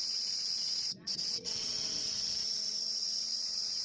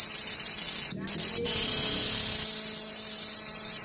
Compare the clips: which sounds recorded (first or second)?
second